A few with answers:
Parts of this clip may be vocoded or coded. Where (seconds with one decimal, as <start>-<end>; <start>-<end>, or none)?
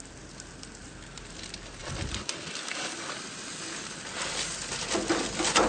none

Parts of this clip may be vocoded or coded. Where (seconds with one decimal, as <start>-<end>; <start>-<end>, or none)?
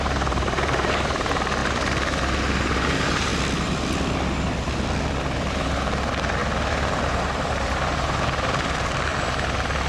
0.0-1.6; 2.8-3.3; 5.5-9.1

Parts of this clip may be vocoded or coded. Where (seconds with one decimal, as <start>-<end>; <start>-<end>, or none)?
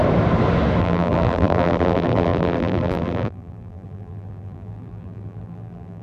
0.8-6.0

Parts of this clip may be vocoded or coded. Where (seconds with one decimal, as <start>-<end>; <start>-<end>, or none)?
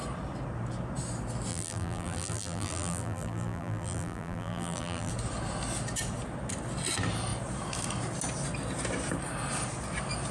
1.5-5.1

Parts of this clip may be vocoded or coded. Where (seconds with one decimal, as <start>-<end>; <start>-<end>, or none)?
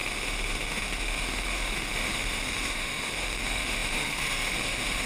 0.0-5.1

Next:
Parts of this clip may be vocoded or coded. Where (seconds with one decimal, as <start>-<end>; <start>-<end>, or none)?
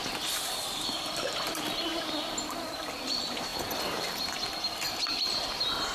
none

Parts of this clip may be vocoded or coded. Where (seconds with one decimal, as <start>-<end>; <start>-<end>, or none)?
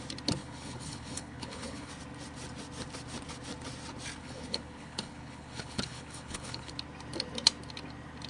0.4-1.9; 4.2-6.7